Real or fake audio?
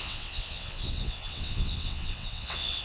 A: fake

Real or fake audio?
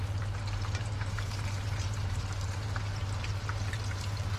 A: fake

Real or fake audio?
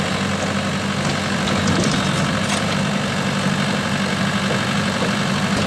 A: real